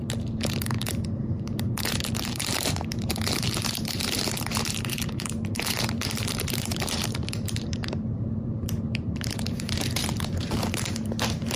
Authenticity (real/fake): fake